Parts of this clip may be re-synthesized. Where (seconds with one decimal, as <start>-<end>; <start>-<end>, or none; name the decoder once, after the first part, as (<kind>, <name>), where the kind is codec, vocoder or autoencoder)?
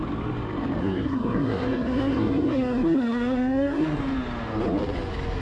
0.8-4.0 (codec, SNAC)